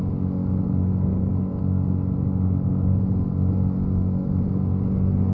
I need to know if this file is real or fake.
real